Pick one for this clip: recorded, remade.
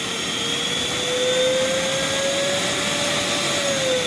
recorded